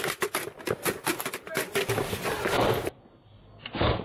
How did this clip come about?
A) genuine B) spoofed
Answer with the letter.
A